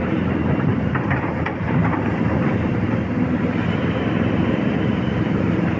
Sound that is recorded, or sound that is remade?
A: remade